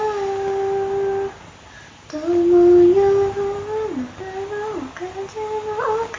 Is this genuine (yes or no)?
yes